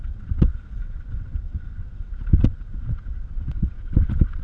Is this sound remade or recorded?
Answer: remade